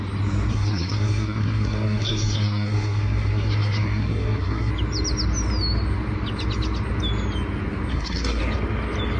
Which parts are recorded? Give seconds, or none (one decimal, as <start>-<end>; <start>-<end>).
0.0-0.5; 4.7-7.9; 8.4-9.2

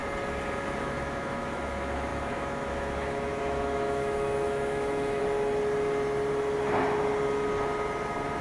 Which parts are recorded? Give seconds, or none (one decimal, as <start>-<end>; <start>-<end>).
0.0-0.8; 5.2-8.4

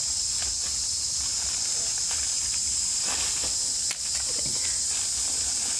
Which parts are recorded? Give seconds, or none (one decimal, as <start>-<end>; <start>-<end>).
0.0-5.8

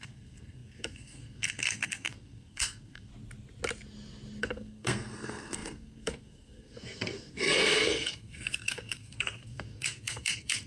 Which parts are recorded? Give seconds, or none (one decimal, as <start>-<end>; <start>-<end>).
3.1-4.4

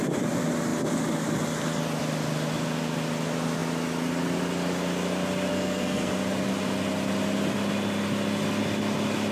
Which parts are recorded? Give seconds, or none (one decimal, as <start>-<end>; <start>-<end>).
0.0-5.5; 6.1-9.3